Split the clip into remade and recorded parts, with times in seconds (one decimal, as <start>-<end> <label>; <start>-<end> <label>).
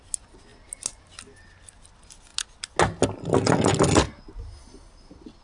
0.0-5.4 recorded